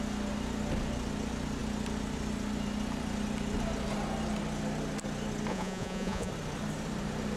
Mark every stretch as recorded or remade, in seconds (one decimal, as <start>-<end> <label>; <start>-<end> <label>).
0.0-5.5 recorded; 5.5-6.3 remade; 6.3-7.4 recorded